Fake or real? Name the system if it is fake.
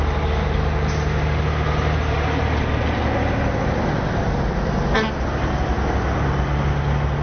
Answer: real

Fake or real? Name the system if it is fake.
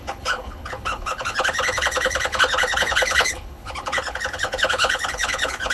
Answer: fake, codec, HILCodec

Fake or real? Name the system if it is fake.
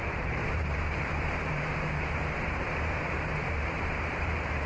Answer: fake, vocoder, BigVGAN v2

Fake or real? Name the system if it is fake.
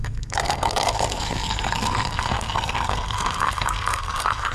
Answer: fake, codec, SNAC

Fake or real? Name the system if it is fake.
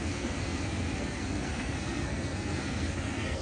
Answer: fake, codec, SNAC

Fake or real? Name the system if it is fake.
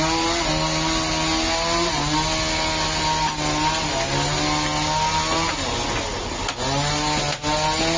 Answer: real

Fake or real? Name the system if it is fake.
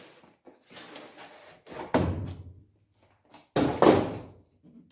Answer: real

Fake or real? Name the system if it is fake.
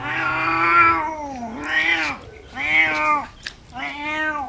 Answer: real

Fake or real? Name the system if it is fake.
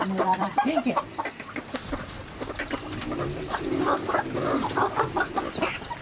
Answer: fake, vocoder, BigVGAN v2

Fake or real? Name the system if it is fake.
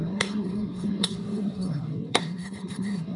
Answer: fake, codec, SNAC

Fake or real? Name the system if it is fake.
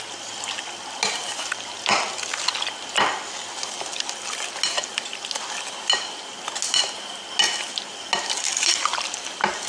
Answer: real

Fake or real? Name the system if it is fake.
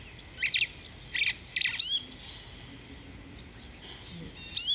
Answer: real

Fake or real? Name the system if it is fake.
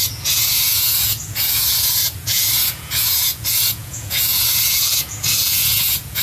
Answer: fake, vocoder, Vocos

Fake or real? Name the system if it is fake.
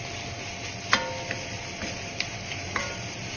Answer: real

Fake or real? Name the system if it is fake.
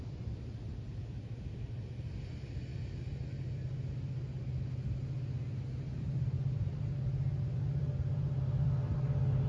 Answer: real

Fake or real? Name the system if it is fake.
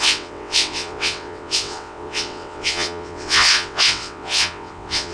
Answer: fake, vocoder, WaveNeXt